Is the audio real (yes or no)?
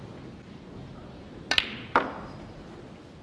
yes